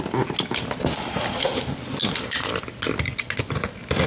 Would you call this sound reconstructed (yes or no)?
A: no